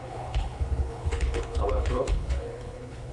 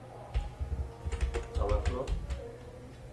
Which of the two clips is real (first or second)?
second